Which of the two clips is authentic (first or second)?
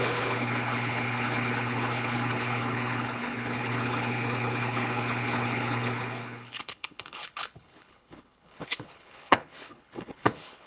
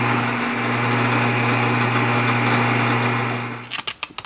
second